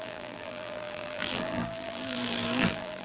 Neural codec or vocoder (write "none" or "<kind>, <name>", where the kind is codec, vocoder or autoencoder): vocoder, BigVGAN v2